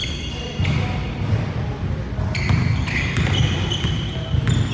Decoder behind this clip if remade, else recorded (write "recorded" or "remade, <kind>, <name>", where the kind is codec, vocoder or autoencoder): recorded